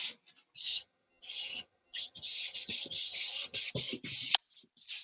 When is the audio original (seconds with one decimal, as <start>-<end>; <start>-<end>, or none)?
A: 0.0-0.7; 3.7-5.0